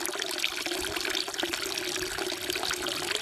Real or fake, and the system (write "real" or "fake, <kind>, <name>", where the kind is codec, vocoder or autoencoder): real